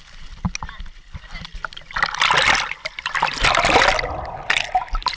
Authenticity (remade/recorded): recorded